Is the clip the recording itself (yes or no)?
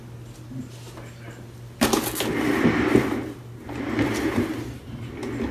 yes